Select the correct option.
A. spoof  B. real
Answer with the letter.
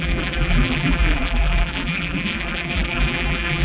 A